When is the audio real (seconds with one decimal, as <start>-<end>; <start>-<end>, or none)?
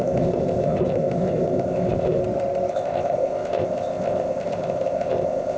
2.2-2.7